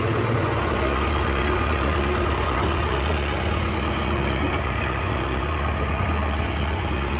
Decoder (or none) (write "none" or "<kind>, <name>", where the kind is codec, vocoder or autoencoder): vocoder, Vocos